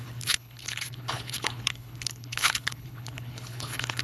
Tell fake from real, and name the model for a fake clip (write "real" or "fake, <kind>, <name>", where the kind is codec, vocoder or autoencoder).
fake, codec, HILCodec